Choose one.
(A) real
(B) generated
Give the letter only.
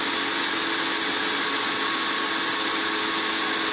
A